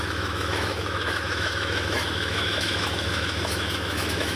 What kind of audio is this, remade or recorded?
remade